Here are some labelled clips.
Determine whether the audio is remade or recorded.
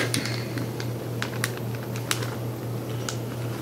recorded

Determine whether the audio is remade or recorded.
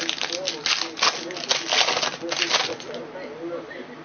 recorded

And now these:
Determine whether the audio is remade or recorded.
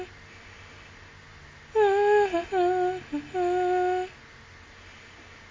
recorded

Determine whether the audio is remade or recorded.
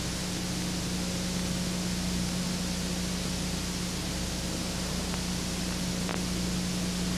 recorded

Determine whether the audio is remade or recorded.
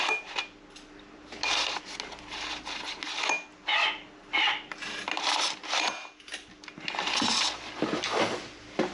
recorded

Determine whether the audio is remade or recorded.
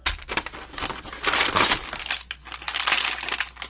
recorded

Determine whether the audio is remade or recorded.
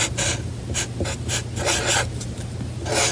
recorded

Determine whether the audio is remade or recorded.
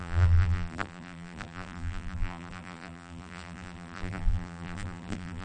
remade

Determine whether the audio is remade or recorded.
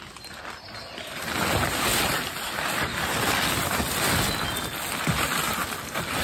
recorded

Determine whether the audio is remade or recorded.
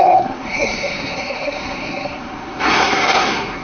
remade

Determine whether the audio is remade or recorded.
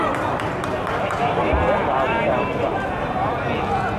recorded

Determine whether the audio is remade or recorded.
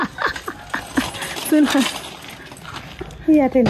recorded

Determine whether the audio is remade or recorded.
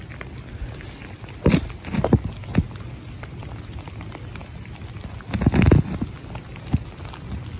recorded